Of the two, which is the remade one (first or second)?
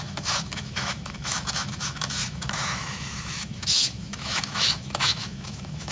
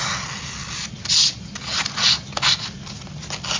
first